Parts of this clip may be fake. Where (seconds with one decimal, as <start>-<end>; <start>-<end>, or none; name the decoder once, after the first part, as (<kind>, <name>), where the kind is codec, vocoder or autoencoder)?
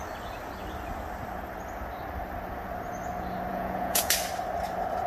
3.5-4.1 (vocoder, Vocos)